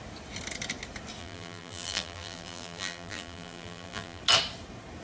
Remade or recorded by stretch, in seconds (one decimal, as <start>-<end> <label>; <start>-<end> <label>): 0.0-1.2 recorded; 1.2-4.2 remade; 4.2-5.0 recorded